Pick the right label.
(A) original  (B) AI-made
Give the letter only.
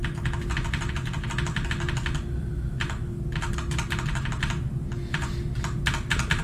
A